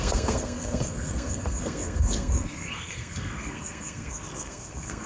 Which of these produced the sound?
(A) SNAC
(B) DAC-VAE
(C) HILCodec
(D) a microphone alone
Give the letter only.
A